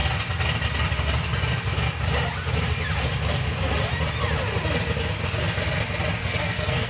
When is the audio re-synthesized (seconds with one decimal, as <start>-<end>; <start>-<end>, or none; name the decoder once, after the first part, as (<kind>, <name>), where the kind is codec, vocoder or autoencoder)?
6.2-6.9 (codec, SNAC)